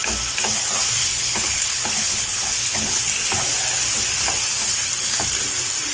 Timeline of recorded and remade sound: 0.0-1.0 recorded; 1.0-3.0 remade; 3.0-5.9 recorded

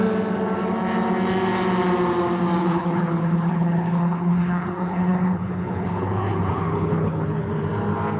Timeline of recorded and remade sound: 0.0-2.6 recorded; 2.6-7.5 remade; 7.5-8.2 recorded